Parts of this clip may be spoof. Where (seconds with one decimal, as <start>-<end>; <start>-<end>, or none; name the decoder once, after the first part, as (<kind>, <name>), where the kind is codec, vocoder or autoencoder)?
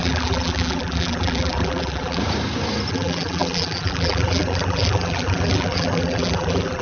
0.0-2.2 (vocoder, BigVGAN v2); 2.9-6.8